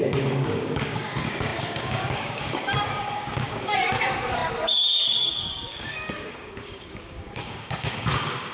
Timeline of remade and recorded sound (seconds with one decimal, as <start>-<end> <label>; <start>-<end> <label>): 0.0-8.5 remade